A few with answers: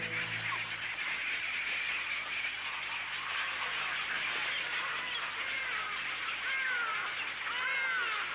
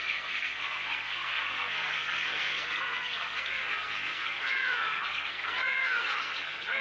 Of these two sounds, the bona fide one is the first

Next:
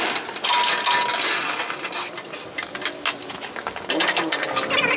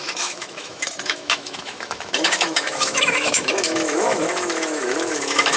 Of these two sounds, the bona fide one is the first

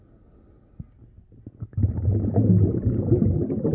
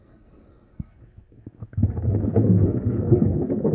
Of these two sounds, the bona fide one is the first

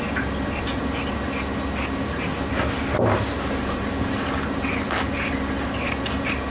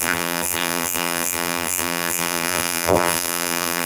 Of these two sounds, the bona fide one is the first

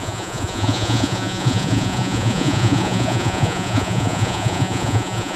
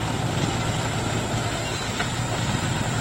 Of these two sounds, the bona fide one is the second